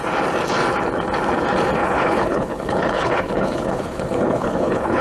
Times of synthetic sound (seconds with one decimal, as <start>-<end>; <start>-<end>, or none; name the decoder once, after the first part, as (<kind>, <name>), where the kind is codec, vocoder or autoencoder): 1.8-5.0 (codec, HILCodec)